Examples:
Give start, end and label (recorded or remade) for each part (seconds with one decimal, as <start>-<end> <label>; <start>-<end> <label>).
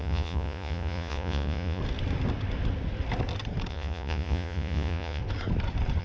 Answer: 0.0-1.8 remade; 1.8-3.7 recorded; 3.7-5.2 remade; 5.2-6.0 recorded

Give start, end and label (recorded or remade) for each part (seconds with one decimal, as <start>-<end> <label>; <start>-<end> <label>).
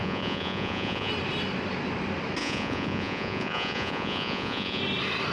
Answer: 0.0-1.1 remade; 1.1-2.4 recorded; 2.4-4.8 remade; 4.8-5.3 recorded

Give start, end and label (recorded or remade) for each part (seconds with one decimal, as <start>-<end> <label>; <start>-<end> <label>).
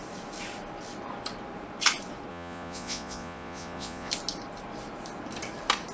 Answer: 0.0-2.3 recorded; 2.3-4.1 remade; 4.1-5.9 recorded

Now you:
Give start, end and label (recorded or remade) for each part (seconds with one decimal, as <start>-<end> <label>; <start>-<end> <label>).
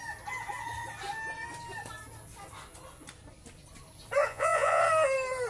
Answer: 0.0-4.3 recorded; 4.3-4.8 remade; 4.8-5.5 recorded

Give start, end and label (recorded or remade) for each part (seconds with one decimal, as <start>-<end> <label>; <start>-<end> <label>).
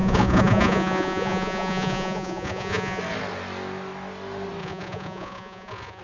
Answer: 0.0-3.0 remade; 3.0-4.6 recorded; 4.6-6.0 remade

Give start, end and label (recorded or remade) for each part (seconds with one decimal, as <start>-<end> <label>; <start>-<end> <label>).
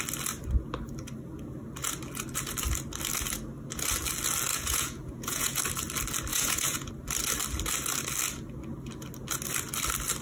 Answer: 0.0-4.5 recorded; 4.5-5.6 remade; 5.6-6.3 recorded; 6.3-6.9 remade; 6.9-10.2 recorded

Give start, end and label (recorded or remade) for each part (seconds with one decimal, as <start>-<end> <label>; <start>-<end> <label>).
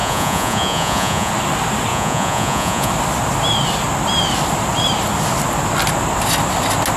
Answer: 0.0-1.3 remade; 1.3-1.9 recorded; 1.9-2.9 remade; 2.9-7.0 recorded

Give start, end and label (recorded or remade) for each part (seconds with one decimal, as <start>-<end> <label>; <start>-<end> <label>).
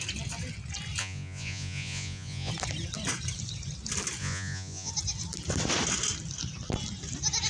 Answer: 0.0-1.0 recorded; 1.0-2.5 remade; 2.5-4.2 recorded; 4.2-4.9 remade; 4.9-7.5 recorded